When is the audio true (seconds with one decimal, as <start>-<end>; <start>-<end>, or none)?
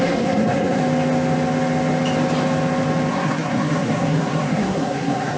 0.8-3.1